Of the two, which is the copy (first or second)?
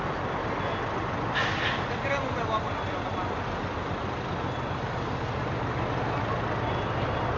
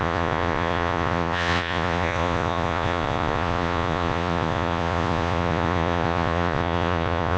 second